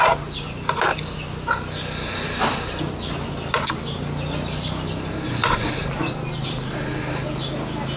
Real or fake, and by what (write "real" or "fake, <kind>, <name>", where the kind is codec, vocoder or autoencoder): real